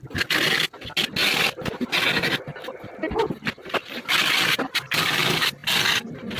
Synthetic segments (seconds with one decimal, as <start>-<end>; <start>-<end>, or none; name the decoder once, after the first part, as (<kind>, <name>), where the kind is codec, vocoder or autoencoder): none